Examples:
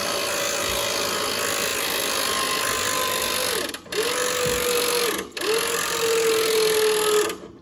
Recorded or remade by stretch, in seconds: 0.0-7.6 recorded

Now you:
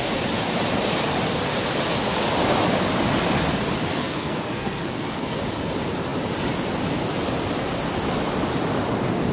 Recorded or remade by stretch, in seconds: 0.0-3.9 recorded; 3.9-5.4 remade; 5.4-9.3 recorded

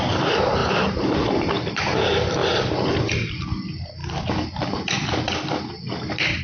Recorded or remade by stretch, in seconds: 0.0-0.6 recorded; 0.6-1.3 remade; 1.3-6.4 recorded

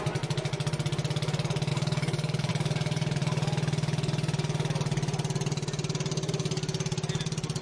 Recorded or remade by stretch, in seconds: 0.0-1.7 recorded; 1.7-2.5 remade; 2.5-7.6 recorded

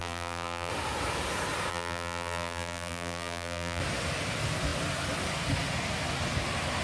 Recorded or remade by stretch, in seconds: 0.0-0.7 remade; 0.7-1.7 recorded; 1.7-3.8 remade; 3.8-6.8 recorded

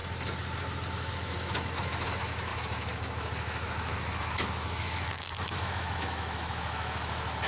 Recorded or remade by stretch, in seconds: 0.0-0.9 recorded; 0.9-7.5 remade